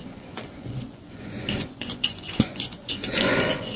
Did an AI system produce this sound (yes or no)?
yes